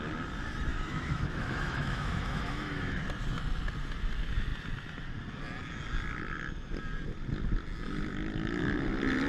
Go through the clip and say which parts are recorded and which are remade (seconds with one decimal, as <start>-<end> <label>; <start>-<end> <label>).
0.0-0.7 recorded; 0.7-3.0 remade; 3.0-9.3 recorded